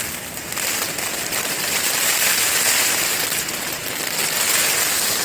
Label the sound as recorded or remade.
recorded